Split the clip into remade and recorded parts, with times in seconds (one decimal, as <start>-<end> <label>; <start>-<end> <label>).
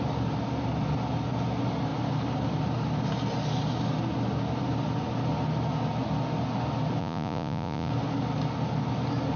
0.0-7.0 recorded; 7.0-7.9 remade; 7.9-9.4 recorded